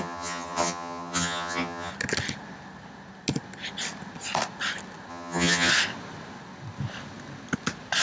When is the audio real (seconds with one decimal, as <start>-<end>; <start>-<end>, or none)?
1.9-5.1; 5.7-8.0

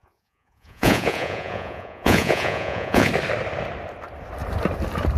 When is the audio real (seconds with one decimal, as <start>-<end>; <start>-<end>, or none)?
3.1-5.2

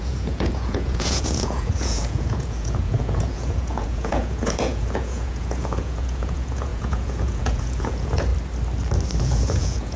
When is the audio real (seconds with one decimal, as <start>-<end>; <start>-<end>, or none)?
8.3-9.2

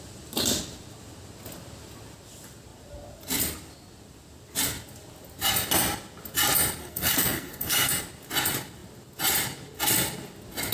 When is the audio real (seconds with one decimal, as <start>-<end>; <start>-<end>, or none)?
0.0-6.8; 7.9-10.7

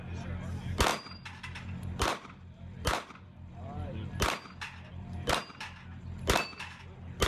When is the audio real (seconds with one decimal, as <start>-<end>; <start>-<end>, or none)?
0.0-0.9; 5.3-7.3

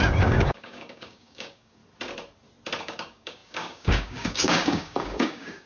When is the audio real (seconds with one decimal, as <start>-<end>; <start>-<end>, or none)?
1.8-2.8

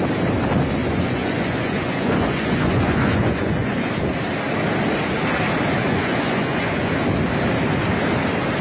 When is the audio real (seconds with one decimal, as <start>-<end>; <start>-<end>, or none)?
0.0-0.8; 3.9-5.8; 6.9-8.6

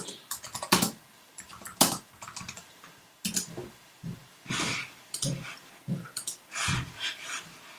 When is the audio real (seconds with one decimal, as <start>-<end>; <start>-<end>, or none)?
1.7-2.6